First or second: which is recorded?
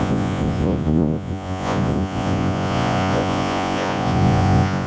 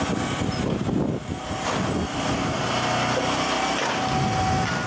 second